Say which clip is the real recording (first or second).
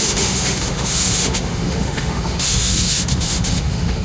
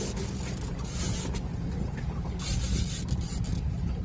second